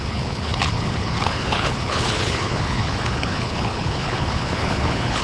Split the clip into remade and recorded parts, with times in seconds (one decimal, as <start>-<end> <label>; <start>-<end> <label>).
0.0-5.2 remade